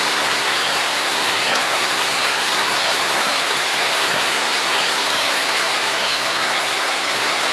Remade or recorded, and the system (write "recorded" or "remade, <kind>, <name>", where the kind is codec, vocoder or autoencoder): remade, codec, SNAC